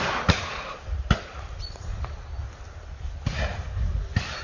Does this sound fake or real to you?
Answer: real